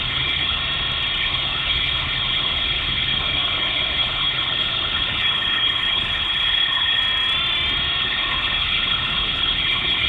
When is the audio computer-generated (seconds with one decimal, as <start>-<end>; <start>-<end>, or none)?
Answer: 0.0-0.6; 1.2-7.0; 8.0-10.1